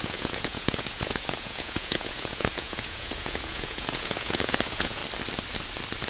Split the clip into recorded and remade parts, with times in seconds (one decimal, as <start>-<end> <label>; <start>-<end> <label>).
0.0-5.0 remade; 5.0-6.1 recorded